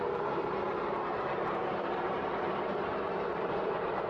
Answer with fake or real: fake